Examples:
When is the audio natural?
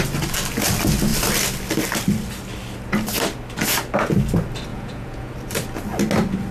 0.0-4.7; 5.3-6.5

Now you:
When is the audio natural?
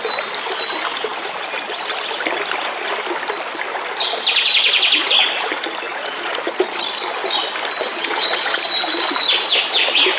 0.0-5.9; 6.8-7.9; 8.6-10.2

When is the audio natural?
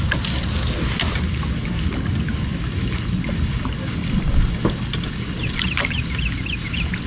0.0-7.1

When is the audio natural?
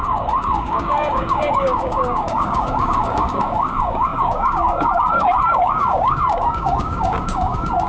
none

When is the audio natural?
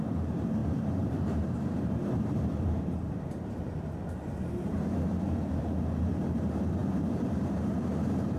none